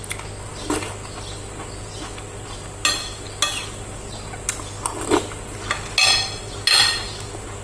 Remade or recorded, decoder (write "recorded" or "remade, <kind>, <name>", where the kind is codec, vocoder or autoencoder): recorded